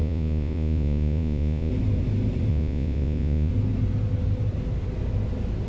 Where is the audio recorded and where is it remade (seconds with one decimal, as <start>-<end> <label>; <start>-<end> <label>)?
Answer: 0.0-1.7 remade; 1.7-2.5 recorded; 2.5-3.5 remade; 3.5-5.7 recorded